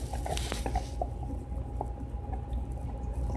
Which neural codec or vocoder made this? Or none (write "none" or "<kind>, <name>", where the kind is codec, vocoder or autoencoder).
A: none